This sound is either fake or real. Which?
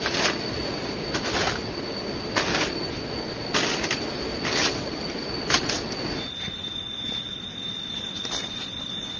real